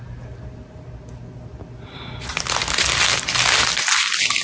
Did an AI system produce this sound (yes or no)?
no